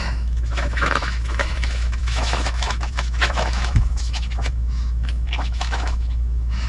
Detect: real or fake fake